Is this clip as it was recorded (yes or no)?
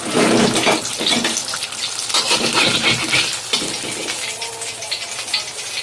yes